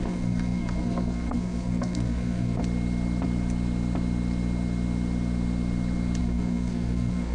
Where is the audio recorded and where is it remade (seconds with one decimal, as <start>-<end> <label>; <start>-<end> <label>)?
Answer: 0.0-2.6 remade; 2.6-6.2 recorded; 6.2-7.3 remade